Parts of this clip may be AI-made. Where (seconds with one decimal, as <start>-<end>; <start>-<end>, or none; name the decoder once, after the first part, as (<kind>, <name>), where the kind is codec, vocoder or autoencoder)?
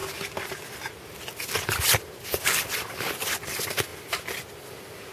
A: none